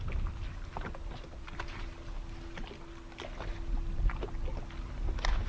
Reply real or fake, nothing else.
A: real